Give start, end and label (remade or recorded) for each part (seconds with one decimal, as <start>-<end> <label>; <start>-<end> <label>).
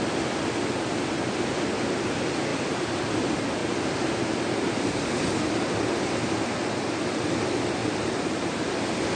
0.0-7.8 recorded; 7.8-8.7 remade; 8.7-9.2 recorded